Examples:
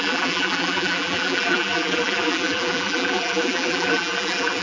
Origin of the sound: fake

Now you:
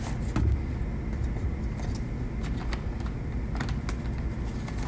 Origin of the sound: real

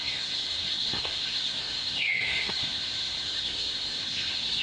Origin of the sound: fake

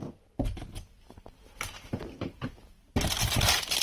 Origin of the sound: real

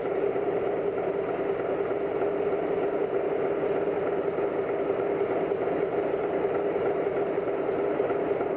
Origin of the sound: real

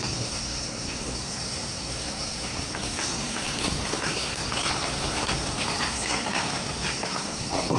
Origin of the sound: fake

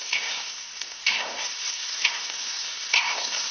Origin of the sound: fake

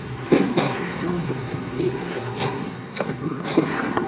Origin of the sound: fake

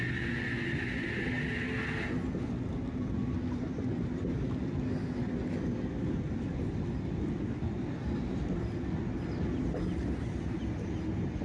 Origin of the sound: real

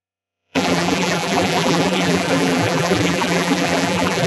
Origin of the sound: fake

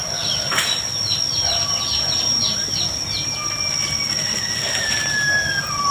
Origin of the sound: real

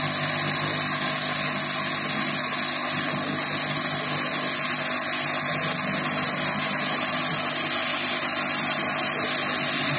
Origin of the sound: real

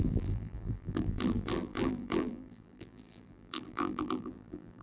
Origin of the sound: fake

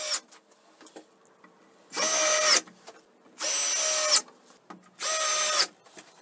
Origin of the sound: real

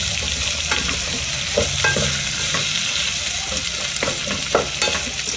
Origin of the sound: real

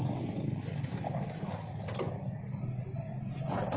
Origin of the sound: real